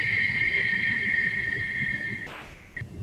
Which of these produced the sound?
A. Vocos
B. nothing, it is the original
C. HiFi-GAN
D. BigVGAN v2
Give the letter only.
B